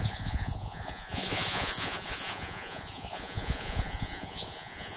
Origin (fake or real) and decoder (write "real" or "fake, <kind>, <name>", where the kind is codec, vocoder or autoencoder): fake, vocoder, Vocos